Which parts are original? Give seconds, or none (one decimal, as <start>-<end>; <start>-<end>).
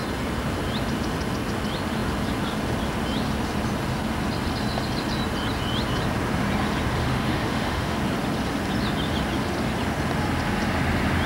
0.0-7.0; 8.0-11.3